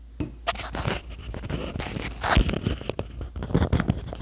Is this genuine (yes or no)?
yes